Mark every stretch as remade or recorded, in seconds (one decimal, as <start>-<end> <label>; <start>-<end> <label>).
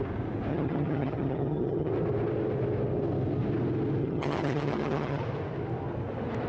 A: 0.0-0.5 recorded; 0.5-1.9 remade; 1.9-4.0 recorded; 4.0-5.2 remade; 5.2-6.5 recorded